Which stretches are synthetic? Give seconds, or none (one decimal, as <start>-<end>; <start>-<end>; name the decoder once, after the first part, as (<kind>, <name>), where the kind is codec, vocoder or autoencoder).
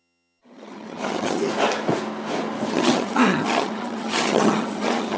0.0-1.4 (vocoder, HiFi-GAN); 2.7-5.2